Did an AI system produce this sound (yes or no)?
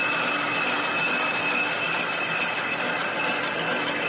no